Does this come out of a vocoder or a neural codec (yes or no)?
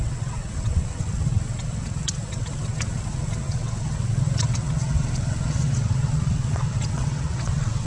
yes